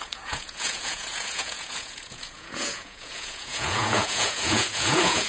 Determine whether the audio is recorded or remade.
remade